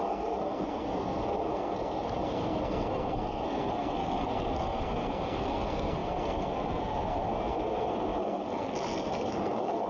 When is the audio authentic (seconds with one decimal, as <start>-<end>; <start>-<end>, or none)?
none